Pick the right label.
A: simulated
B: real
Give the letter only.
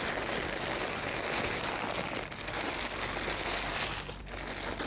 B